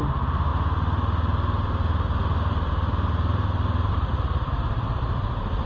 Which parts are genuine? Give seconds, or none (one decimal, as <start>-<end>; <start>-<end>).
0.5-3.9